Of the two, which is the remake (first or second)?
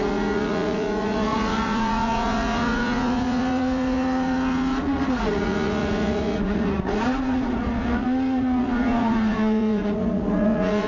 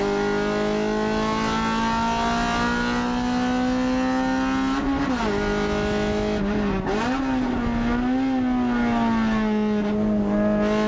first